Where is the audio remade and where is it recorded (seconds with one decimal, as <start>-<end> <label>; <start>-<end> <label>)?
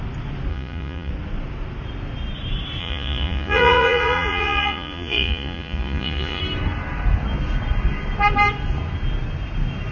0.0-0.5 recorded; 0.5-1.1 remade; 1.1-2.8 recorded; 2.8-6.4 remade; 6.4-9.9 recorded